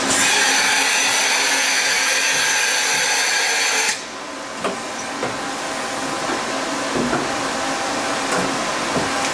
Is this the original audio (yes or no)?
yes